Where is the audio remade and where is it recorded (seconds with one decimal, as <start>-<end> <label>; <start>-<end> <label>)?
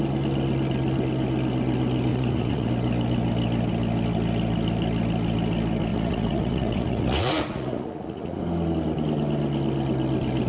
0.0-2.1 recorded; 2.1-2.7 remade; 2.7-5.9 recorded; 5.9-8.4 remade; 8.4-10.5 recorded